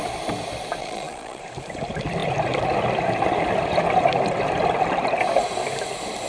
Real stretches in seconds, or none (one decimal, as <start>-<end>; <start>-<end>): 0.0-0.8; 1.4-6.3